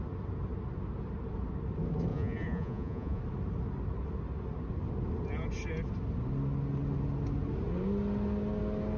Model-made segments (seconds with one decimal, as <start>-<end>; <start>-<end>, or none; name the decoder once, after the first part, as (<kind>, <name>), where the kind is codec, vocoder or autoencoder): 2.1-3.2 (vocoder, Vocos)